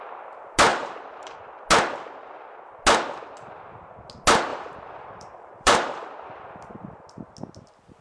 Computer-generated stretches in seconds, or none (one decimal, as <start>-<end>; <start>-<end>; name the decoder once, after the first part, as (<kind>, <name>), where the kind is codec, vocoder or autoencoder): 0.7-1.5 (vocoder, BigVGAN v2); 4.5-7.0